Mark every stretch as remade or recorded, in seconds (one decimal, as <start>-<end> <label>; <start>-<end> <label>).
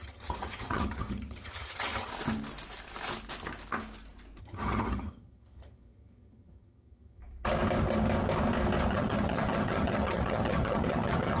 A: 0.0-2.1 remade; 2.1-4.4 recorded; 4.4-7.2 remade; 7.2-8.9 recorded; 8.9-11.4 remade